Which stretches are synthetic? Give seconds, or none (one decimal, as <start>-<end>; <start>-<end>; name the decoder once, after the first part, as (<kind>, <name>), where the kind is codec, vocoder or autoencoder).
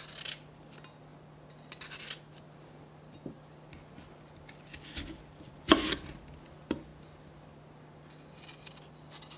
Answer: 6.9-7.6 (vocoder, BigVGAN v2)